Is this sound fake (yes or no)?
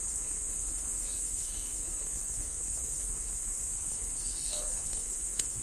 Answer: yes